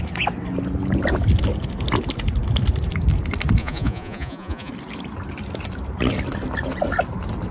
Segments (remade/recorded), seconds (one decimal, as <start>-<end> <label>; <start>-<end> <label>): 0.0-3.6 recorded; 3.6-4.7 remade; 4.7-7.5 recorded